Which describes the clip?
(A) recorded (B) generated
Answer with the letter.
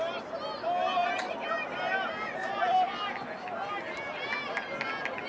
A